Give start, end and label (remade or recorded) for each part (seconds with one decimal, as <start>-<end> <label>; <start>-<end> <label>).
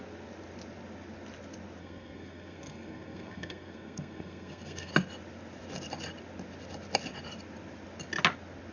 0.0-1.8 recorded; 1.8-4.9 remade; 4.9-8.7 recorded